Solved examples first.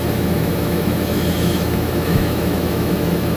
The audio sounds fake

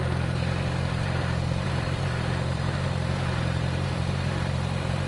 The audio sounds fake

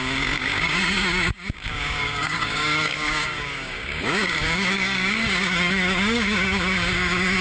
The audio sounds fake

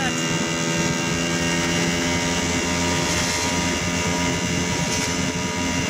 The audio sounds real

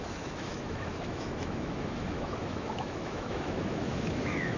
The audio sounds fake